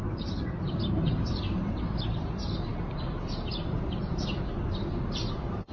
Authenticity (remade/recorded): recorded